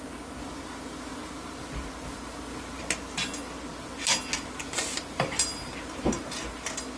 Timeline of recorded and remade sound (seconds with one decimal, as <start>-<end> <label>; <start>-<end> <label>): 0.0-7.0 recorded